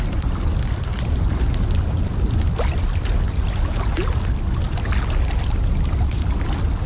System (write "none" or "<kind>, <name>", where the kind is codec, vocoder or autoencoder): none